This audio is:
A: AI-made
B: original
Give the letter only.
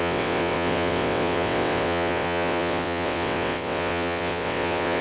A